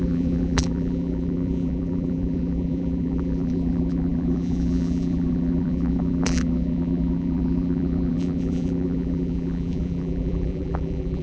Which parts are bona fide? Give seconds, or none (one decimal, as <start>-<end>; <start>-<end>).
none